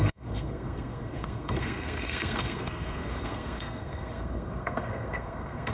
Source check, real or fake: fake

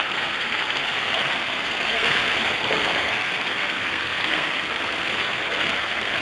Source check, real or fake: fake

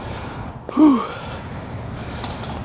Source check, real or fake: real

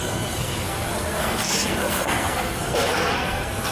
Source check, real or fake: fake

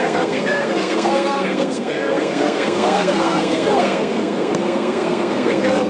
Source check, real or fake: fake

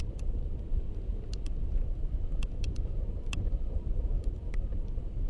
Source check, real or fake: real